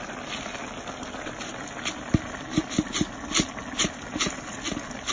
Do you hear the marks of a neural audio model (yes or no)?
no